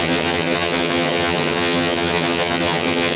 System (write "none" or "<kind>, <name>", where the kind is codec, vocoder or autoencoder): vocoder, HiFi-GAN